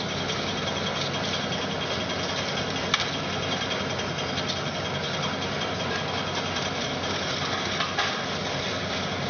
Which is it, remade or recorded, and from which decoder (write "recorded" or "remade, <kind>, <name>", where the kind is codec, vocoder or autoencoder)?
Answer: recorded